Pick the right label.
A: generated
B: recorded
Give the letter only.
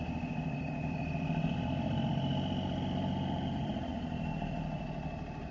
A